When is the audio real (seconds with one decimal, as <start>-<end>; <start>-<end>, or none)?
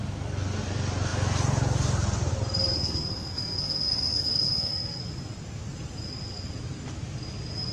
0.0-2.8; 5.0-7.7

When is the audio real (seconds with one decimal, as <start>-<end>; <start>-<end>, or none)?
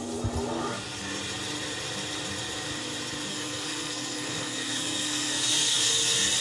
0.0-3.3; 5.9-6.4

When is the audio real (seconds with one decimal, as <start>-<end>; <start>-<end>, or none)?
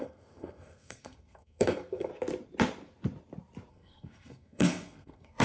2.1-3.7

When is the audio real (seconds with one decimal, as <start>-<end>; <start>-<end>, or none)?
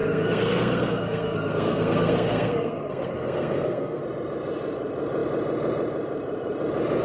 4.0-7.0